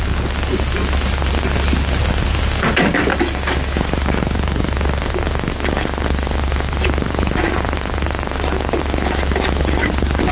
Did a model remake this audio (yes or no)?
no